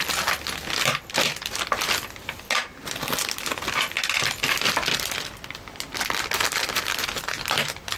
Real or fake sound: real